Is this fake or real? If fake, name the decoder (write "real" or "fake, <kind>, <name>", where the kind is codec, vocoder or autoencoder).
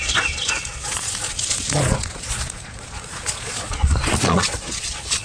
fake, vocoder, Vocos